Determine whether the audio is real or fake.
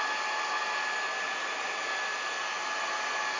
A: real